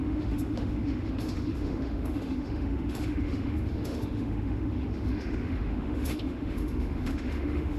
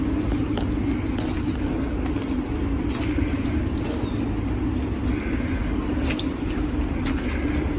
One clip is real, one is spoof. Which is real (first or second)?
second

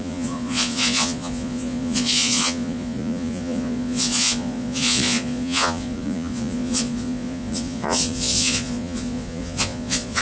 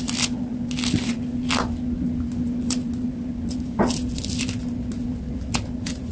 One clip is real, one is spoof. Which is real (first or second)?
second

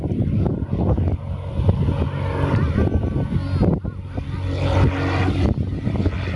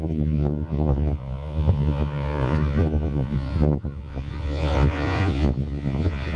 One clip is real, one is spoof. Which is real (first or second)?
first